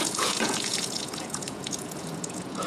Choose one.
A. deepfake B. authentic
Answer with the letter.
A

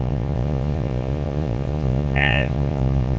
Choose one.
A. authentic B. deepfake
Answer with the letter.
B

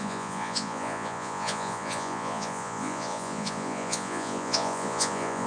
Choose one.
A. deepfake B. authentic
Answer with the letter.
A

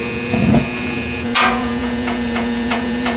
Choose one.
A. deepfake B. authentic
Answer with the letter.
A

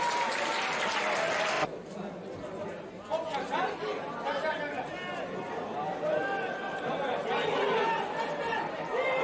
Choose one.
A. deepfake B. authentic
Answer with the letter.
B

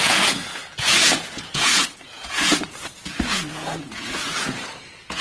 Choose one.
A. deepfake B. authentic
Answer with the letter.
A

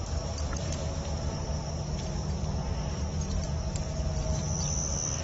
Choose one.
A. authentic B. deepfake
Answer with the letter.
A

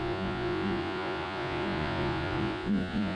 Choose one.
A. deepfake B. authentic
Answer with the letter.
A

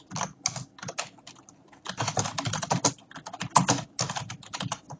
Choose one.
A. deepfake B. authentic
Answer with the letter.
B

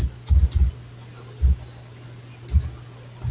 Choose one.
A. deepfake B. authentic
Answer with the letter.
B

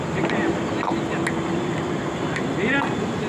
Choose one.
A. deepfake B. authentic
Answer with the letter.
B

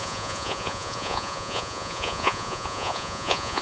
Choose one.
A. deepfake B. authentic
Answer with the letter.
A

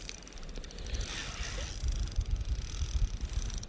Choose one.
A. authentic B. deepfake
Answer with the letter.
A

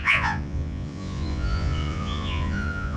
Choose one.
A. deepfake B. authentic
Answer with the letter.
A